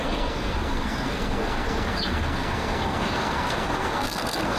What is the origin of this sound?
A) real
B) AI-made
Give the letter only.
B